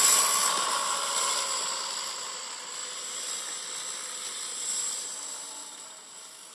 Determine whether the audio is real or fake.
real